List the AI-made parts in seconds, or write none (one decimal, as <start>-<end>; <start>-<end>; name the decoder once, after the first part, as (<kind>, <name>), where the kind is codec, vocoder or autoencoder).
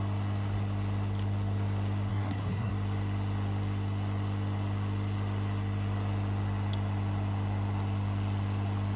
2.1-2.7 (codec, SNAC)